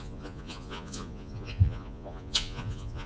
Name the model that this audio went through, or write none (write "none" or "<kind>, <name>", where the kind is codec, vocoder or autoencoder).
vocoder, Vocos